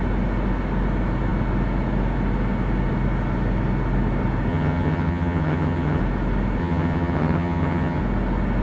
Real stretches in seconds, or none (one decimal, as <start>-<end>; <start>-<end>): 0.0-4.5; 6.0-6.6; 8.0-8.6